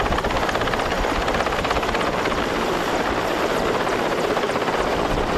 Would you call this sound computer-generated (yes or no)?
no